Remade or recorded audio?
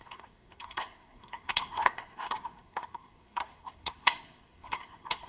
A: remade